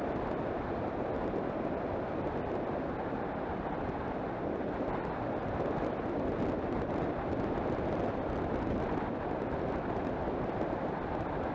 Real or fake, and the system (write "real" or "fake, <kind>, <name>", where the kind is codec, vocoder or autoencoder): real